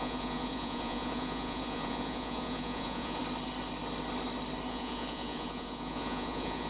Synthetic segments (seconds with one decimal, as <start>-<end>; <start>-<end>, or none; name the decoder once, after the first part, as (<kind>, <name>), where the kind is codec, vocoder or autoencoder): 0.0-3.2 (vocoder, Vocos); 4.7-6.7